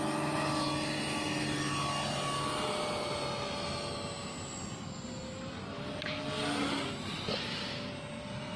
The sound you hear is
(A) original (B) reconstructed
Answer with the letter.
A